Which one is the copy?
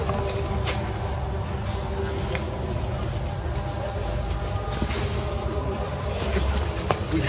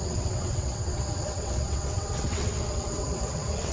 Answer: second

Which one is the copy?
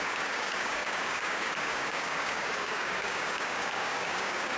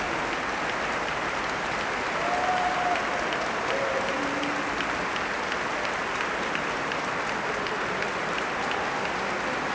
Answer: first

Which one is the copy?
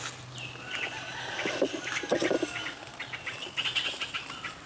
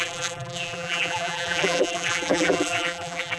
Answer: second